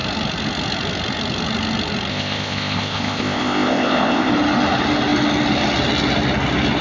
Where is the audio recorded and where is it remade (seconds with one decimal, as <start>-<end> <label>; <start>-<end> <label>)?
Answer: 0.0-2.1 recorded; 2.1-4.3 remade; 4.3-6.8 recorded